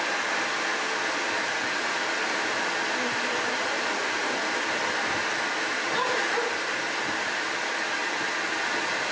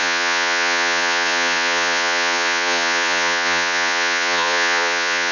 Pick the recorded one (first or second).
first